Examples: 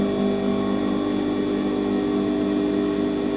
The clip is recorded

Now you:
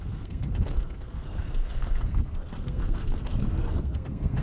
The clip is remade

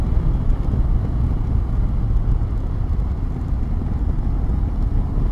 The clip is recorded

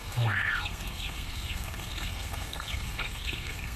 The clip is remade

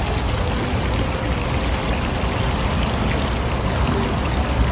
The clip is recorded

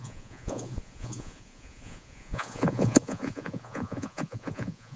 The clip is remade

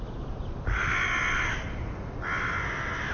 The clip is recorded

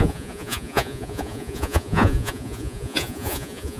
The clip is remade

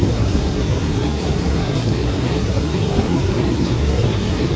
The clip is remade